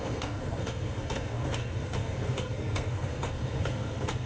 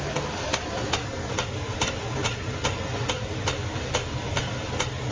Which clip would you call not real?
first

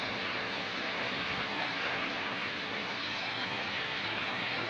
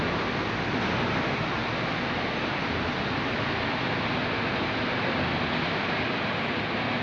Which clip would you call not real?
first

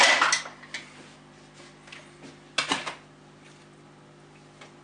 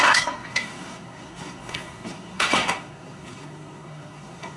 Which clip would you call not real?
second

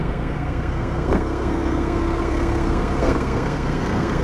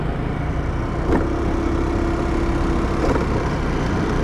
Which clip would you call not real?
first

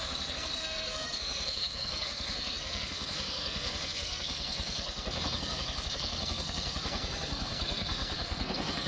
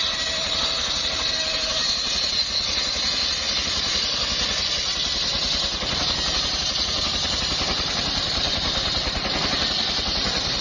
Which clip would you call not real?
first